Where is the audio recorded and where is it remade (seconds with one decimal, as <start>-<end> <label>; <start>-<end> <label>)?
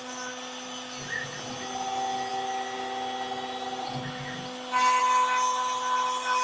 0.0-6.4 recorded